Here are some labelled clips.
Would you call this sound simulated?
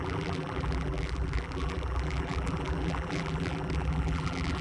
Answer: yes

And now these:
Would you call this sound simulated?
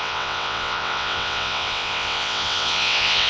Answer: yes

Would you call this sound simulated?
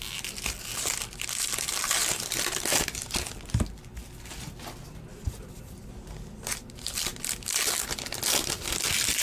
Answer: no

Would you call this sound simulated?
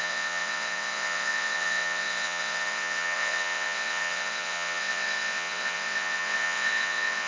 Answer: yes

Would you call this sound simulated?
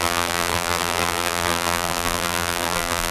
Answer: yes